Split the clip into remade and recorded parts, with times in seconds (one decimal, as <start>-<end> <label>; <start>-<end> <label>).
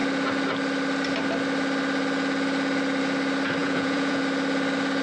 0.0-3.6 recorded; 3.6-4.2 remade; 4.2-5.0 recorded